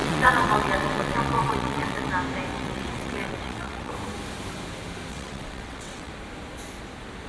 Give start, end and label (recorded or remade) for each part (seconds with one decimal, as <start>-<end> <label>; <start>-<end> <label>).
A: 0.0-2.1 remade; 2.1-2.5 recorded; 2.5-3.9 remade; 3.9-5.1 recorded; 5.1-6.1 remade; 6.1-7.3 recorded